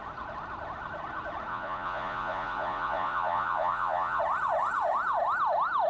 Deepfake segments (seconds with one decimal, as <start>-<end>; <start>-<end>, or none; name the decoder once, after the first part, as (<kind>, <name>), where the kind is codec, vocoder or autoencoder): 1.5-4.2 (vocoder, Vocos)